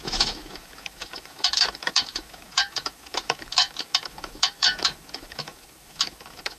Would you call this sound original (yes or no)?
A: no